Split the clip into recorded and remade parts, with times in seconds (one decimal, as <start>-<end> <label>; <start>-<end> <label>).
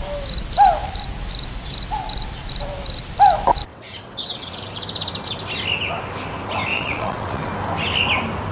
0.0-3.7 recorded; 3.7-4.5 remade; 4.5-6.7 recorded; 6.7-7.5 remade; 7.5-8.5 recorded